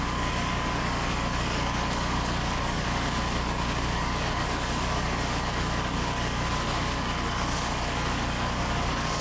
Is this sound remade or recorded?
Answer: remade